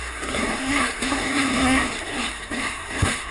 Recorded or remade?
remade